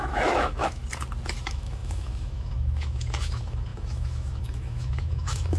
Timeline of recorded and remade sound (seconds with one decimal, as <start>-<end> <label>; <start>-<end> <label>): 0.0-0.8 remade; 0.8-1.4 recorded; 1.4-5.6 remade